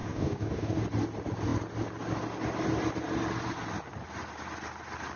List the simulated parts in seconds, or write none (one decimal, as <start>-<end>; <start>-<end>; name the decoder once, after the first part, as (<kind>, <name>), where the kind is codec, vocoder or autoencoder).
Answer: 0.0-0.8 (codec, DAC)